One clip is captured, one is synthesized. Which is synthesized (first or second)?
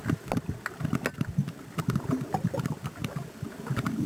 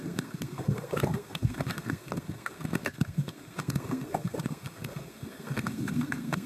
second